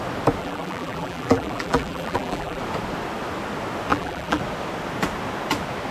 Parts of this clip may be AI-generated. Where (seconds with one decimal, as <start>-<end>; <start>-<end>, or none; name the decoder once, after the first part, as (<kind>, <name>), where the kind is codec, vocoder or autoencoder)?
0.4-2.6 (vocoder, BigVGAN v2); 3.9-4.4